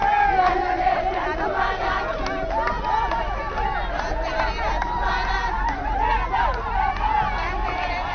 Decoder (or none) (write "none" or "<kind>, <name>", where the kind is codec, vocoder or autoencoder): none